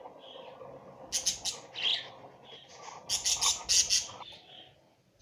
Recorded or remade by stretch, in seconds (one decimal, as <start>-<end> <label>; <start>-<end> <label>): 0.0-5.2 recorded